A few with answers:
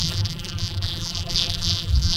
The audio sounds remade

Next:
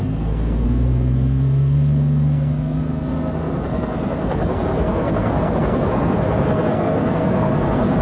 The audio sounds remade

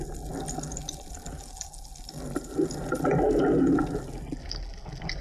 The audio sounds recorded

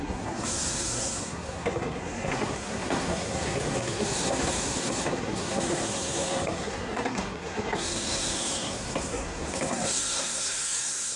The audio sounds remade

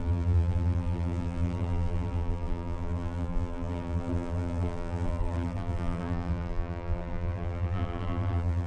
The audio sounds remade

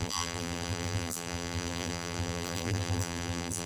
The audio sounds remade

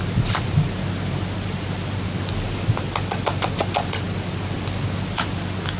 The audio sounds recorded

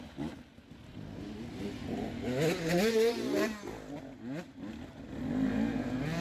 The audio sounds recorded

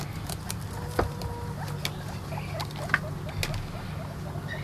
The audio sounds recorded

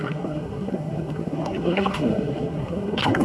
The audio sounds remade